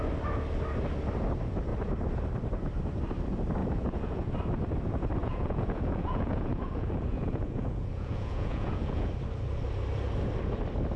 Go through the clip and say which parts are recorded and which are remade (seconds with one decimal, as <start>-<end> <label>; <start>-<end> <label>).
0.0-3.6 recorded; 3.6-4.3 remade; 4.3-5.2 recorded; 5.2-9.1 remade; 9.1-11.0 recorded

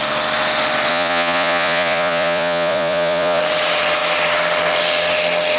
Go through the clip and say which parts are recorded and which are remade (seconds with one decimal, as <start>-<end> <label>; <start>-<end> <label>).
0.0-0.9 recorded; 0.9-3.4 remade; 3.4-5.6 recorded